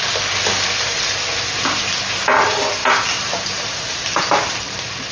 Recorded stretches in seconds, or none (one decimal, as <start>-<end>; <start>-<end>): 0.0-2.8; 4.5-5.1